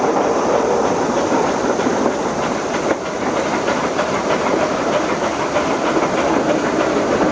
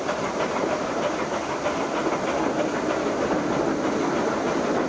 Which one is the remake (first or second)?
first